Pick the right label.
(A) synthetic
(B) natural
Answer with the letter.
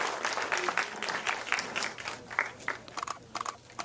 B